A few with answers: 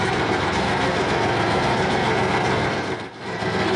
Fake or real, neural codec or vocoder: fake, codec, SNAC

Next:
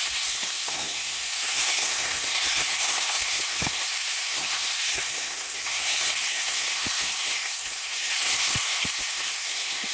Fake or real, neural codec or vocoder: fake, codec, SNAC